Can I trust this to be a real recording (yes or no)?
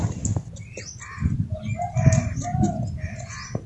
yes